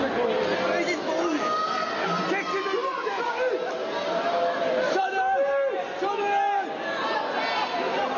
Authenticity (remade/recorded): recorded